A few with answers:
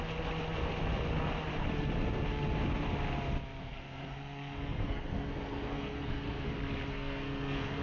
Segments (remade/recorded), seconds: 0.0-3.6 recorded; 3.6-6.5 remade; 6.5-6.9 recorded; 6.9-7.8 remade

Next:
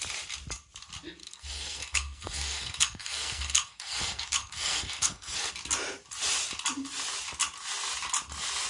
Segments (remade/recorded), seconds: 0.0-1.2 recorded; 1.2-5.5 remade; 5.5-8.7 recorded

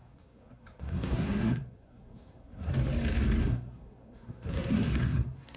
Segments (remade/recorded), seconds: 0.0-2.7 remade; 2.7-3.4 recorded; 3.4-5.6 remade

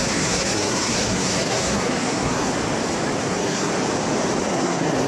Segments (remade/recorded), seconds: 0.0-2.5 remade; 2.5-3.2 recorded; 3.2-3.7 remade; 3.7-4.4 recorded; 4.4-5.1 remade

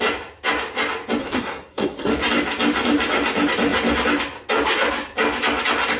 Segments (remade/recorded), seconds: 0.0-1.2 recorded; 1.2-2.1 remade; 2.1-6.0 recorded

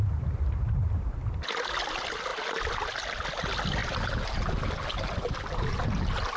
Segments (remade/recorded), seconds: 0.0-6.4 recorded